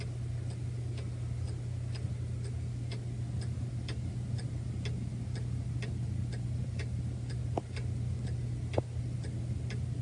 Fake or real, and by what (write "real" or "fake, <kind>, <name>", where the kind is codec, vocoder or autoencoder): real